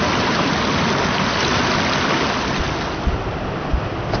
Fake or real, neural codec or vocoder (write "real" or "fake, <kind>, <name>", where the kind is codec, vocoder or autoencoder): real